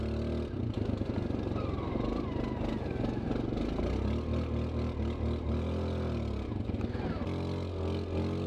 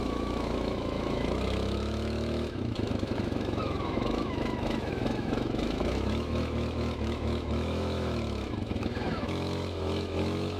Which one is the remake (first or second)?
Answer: second